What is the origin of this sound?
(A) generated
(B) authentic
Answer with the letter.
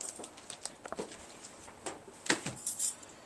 B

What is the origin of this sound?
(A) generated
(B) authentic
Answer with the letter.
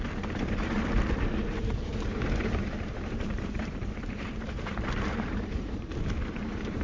A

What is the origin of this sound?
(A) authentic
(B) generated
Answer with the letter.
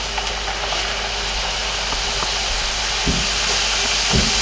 A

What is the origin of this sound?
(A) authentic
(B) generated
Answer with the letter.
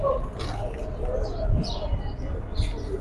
A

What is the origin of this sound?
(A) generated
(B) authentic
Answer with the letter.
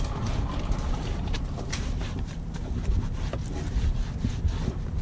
A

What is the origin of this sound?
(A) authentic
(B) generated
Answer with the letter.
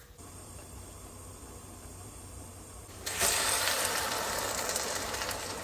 B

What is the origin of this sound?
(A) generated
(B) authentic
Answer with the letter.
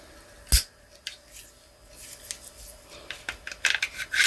B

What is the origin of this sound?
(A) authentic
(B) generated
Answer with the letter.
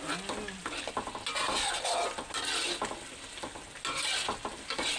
A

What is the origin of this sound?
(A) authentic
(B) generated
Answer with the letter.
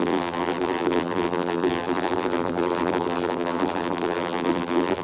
B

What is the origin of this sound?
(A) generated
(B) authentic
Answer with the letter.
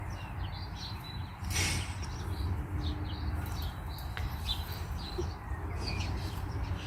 B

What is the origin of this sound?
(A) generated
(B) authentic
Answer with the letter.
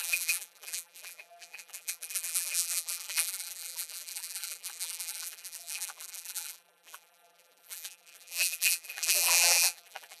A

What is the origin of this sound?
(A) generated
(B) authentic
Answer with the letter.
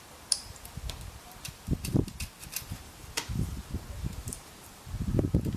A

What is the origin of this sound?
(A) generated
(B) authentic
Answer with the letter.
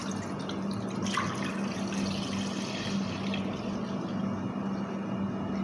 B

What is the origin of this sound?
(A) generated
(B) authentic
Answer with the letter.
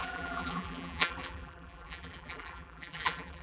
A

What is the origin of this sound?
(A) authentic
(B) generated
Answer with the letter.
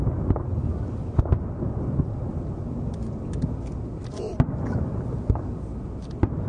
A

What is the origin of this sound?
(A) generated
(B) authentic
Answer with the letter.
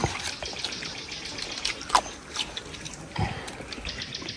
A